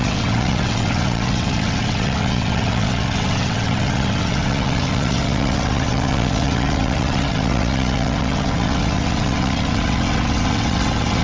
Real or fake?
fake